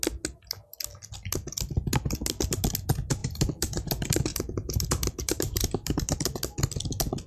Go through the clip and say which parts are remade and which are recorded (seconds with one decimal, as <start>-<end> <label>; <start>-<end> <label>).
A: 0.0-3.2 recorded; 3.2-3.9 remade; 3.9-4.3 recorded; 4.3-6.2 remade; 6.2-7.3 recorded